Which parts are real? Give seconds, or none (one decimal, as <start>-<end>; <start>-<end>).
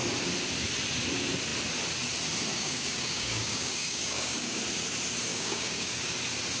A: 0.0-2.5; 4.6-5.3; 5.9-6.6